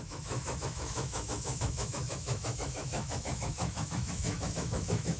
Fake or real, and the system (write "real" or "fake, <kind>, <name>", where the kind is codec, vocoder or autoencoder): fake, autoencoder, DAC-VAE